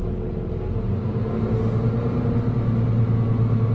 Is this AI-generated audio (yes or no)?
no